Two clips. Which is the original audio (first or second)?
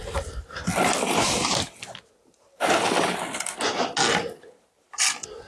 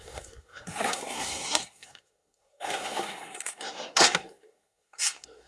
first